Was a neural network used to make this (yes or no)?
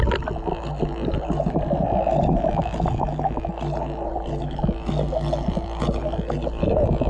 no